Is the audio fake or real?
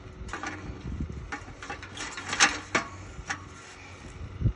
real